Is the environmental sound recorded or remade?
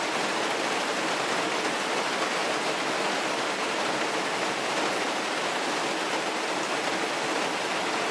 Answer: recorded